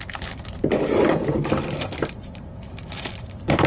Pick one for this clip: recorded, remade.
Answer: recorded